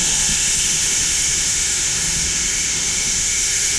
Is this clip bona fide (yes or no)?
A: no